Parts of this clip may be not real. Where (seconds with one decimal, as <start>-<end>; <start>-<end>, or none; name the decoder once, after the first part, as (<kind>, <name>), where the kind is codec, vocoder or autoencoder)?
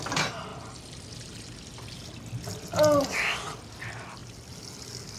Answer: none